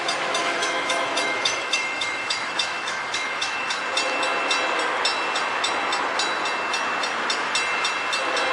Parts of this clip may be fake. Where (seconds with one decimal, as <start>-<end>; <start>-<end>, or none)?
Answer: 0.4-3.8